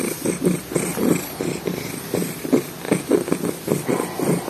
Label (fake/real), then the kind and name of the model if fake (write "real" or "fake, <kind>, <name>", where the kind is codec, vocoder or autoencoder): real